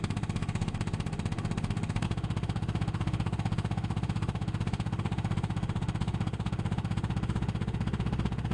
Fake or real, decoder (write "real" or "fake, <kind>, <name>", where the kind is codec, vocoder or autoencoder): fake, autoencoder, DAC-VAE